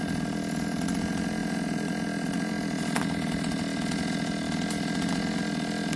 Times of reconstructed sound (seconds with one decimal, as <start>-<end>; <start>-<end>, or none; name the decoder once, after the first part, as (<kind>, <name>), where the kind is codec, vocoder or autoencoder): none